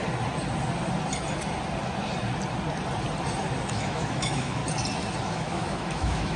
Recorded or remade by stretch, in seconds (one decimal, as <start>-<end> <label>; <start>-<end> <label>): 0.0-3.7 recorded; 3.7-4.6 remade; 4.6-5.2 recorded; 5.2-6.4 remade